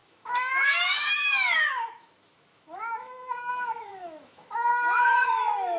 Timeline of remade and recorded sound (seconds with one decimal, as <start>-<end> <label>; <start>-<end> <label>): 0.0-5.8 remade

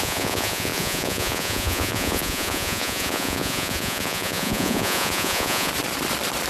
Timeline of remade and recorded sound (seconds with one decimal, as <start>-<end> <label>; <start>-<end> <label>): 0.0-5.7 remade; 5.7-6.5 recorded

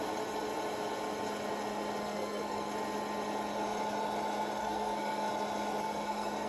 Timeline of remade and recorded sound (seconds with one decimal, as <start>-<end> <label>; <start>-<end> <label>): 0.0-2.0 recorded; 2.0-2.7 remade; 2.7-4.6 recorded; 4.6-5.3 remade; 5.3-5.8 recorded; 5.8-6.5 remade

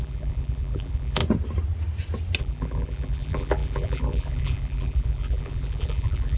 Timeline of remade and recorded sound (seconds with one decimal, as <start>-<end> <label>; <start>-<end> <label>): 0.0-1.2 remade; 1.2-2.4 recorded; 2.4-6.4 remade

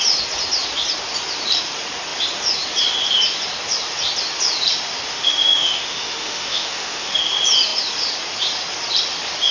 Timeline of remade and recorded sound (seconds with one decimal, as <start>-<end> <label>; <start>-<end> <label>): 0.0-5.1 recorded; 5.1-7.2 remade; 7.2-9.5 recorded